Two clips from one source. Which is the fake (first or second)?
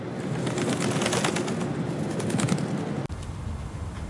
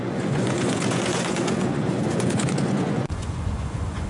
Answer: second